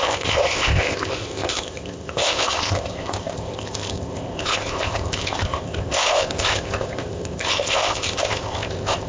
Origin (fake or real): fake